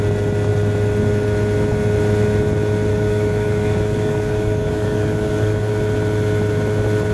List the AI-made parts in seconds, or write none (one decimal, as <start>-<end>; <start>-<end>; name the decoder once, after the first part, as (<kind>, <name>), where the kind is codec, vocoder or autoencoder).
2.9-5.7 (codec, DAC)